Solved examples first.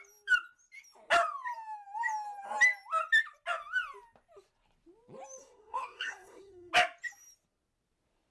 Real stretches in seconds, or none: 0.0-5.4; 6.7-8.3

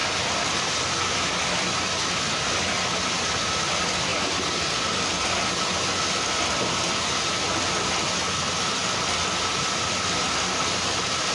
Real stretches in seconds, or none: 0.0-11.3

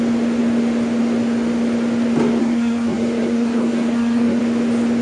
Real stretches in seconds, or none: 0.0-2.4; 4.4-5.0

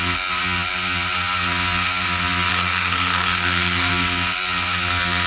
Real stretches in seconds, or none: 0.0-2.5; 3.9-5.3

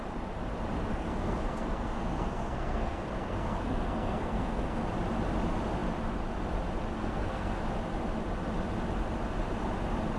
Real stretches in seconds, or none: 0.0-0.9; 4.8-7.0; 7.6-10.2

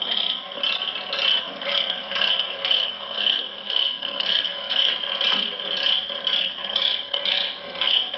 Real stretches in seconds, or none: 0.6-1.4; 4.9-6.4